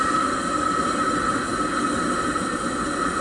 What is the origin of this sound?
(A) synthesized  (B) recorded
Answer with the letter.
B